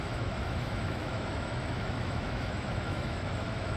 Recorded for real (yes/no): no